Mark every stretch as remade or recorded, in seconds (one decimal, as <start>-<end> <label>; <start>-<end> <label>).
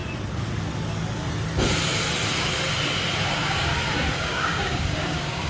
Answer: 0.0-3.3 recorded; 3.3-3.7 remade; 3.7-4.2 recorded; 4.2-5.5 remade